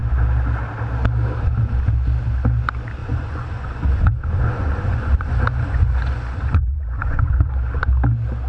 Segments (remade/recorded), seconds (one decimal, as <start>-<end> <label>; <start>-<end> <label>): 0.0-3.0 recorded; 3.0-7.5 remade; 7.5-8.5 recorded